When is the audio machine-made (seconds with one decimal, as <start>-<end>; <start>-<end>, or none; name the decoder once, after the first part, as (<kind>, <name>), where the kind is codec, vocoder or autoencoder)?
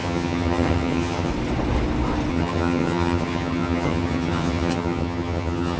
0.0-1.3 (vocoder, HiFi-GAN); 2.3-5.8